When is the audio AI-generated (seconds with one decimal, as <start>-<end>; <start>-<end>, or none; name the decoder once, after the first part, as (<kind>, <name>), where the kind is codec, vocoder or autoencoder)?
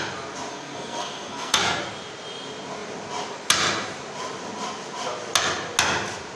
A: 0.5-1.8 (codec, SNAC)